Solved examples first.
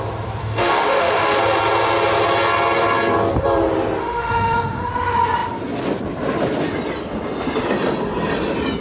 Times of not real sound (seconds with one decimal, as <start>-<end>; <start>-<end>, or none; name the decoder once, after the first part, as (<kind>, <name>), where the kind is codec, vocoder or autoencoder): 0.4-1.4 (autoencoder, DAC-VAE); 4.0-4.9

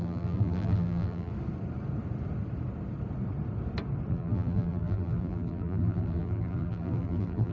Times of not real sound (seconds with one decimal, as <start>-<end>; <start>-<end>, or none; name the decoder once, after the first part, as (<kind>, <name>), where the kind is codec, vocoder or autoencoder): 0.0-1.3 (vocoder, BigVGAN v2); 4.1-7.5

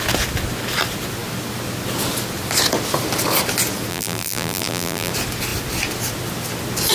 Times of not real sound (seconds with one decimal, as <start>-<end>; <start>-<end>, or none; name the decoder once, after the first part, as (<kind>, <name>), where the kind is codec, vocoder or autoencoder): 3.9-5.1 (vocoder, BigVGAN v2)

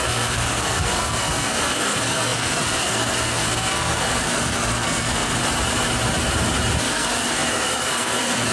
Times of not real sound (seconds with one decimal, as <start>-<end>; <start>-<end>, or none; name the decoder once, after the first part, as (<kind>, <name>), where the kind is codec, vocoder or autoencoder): 0.0-5.4 (codec, SNAC); 6.8-8.5

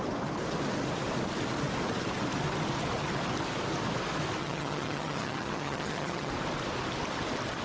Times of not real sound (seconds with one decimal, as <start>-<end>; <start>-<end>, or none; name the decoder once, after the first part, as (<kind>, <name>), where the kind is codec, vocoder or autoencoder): 4.4-6.3 (vocoder, HiFi-GAN)